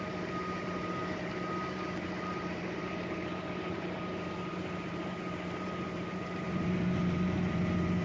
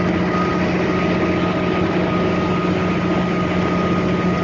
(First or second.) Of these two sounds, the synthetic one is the first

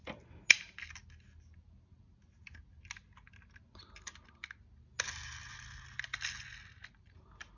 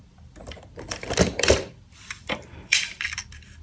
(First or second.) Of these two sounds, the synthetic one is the second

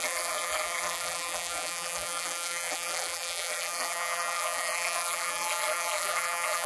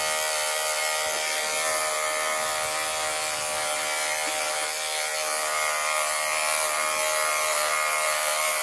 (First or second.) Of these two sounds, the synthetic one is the first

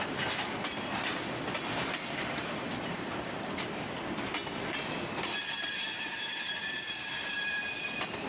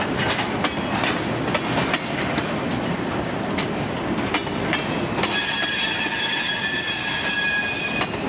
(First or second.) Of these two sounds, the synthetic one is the first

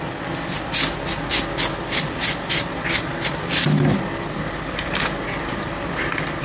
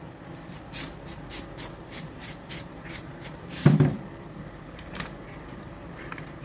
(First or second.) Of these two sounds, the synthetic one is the second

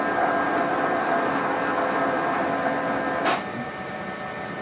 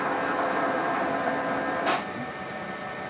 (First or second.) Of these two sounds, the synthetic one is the second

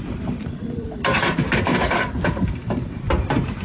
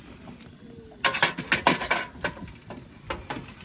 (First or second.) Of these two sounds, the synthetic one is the first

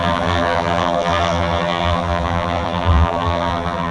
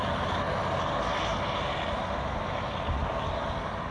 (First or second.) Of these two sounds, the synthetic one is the first